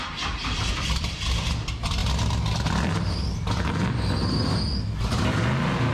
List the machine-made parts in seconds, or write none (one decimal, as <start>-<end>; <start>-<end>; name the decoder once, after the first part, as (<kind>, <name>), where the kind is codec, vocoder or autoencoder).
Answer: none